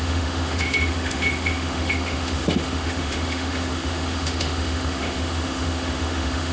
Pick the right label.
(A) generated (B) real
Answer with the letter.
A